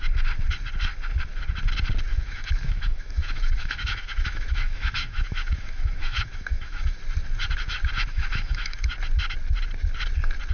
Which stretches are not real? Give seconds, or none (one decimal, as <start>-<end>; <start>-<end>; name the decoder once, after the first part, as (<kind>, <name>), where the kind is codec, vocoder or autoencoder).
2.1-7.0 (autoencoder, DAC-VAE); 8.1-8.9